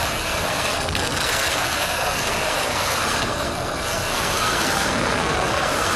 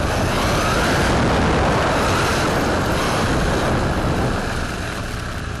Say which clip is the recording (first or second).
second